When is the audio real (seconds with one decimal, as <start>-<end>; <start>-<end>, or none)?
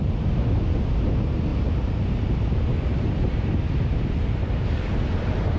0.0-5.6